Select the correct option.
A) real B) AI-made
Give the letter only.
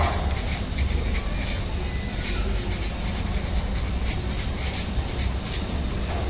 A